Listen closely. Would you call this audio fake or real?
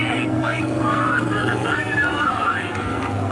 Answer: fake